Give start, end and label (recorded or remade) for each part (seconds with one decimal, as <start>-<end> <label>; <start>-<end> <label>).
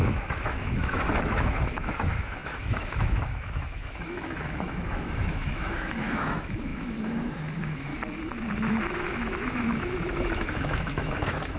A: 0.0-7.9 remade; 7.9-8.7 recorded; 8.7-11.6 remade